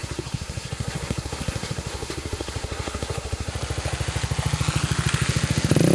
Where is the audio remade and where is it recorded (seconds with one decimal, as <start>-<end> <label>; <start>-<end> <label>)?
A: 0.0-3.5 remade; 3.5-5.9 recorded